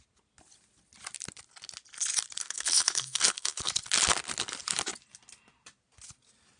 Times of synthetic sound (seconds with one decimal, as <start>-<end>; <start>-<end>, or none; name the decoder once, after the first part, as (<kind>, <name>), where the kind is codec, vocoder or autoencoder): 2.4-3.7 (codec, SNAC)